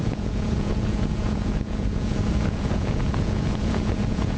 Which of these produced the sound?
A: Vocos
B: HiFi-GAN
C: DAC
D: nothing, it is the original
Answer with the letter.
A